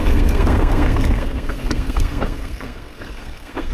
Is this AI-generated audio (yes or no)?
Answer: yes